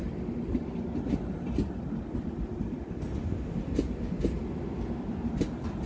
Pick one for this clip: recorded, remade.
recorded